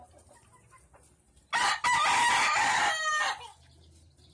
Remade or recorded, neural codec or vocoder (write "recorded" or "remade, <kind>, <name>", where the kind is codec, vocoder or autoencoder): recorded